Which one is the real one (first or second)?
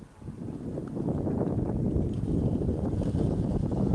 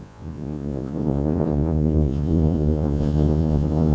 first